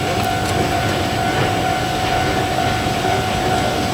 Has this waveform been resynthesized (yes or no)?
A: no